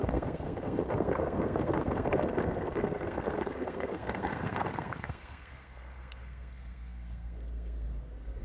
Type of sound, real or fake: fake